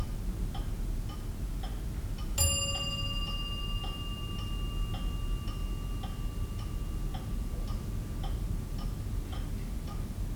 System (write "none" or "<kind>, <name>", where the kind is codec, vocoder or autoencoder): none